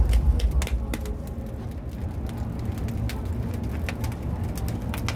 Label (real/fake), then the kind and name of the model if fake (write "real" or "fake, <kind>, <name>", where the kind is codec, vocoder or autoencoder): real